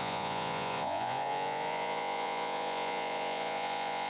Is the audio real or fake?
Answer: fake